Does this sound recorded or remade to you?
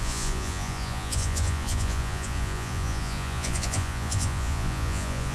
remade